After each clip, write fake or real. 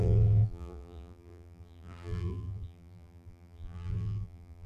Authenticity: fake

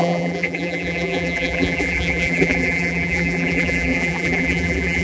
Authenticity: fake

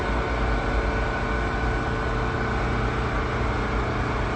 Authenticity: real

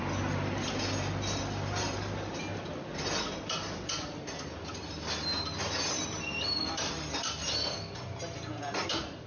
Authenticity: real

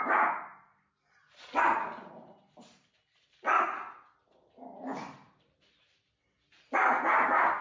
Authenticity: real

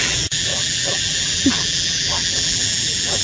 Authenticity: fake